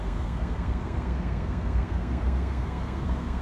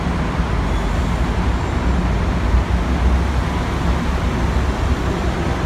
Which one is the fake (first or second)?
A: first